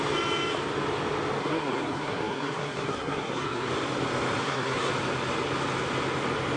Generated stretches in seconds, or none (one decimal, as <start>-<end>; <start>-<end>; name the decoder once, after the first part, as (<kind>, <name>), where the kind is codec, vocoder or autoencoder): 1.4-3.7 (codec, SNAC); 4.4-4.9